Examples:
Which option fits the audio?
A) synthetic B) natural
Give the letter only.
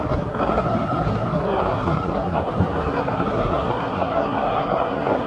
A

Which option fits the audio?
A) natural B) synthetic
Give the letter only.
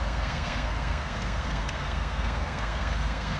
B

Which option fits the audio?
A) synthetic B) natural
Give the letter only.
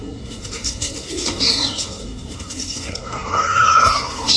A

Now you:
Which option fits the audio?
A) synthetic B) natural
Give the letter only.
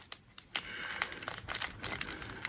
B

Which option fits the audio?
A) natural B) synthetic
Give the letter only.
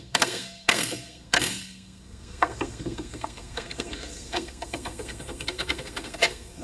B